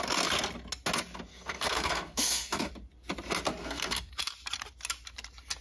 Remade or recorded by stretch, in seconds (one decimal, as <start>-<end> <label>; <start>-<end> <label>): 0.0-1.3 recorded; 1.3-2.7 remade; 2.7-3.6 recorded; 3.6-4.1 remade; 4.1-5.6 recorded

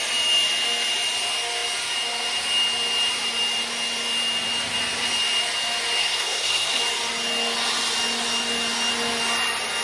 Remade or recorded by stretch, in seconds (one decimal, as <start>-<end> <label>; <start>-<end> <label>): 0.0-6.0 recorded; 6.0-6.8 remade; 6.8-9.8 recorded

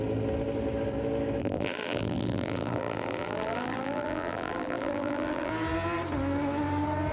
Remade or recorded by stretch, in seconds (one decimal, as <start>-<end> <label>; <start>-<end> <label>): 0.0-1.4 recorded; 1.4-5.5 remade; 5.5-7.1 recorded

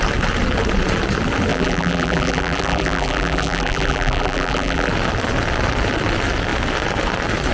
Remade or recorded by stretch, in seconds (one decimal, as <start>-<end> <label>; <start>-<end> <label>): 0.0-1.5 recorded; 1.5-4.9 remade; 4.9-7.5 recorded

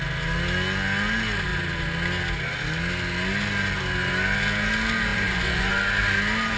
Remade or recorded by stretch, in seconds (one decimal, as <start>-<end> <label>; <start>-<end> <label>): 0.0-5.1 recorded; 5.1-5.7 remade; 5.7-6.6 recorded

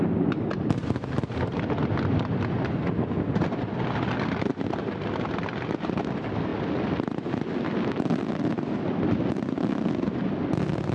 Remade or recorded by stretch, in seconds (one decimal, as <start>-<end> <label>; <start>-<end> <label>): 0.0-10.9 recorded

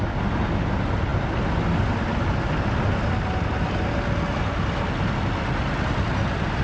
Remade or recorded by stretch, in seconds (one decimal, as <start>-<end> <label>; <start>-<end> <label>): 0.0-6.6 recorded